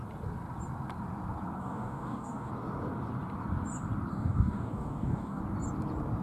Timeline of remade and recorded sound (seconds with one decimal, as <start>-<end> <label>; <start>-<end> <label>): 0.0-1.6 recorded; 1.6-2.5 remade; 2.5-4.1 recorded; 4.1-5.4 remade; 5.4-6.2 recorded